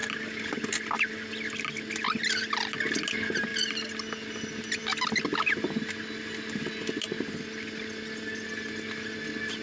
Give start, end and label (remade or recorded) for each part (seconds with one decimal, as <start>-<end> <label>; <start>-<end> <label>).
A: 0.0-9.6 recorded